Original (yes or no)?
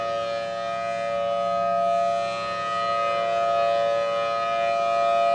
yes